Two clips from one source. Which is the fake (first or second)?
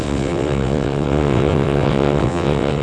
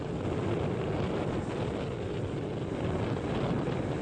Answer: first